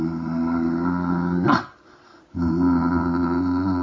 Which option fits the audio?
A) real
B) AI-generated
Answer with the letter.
A